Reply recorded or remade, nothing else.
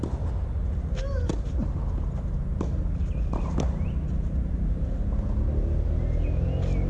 recorded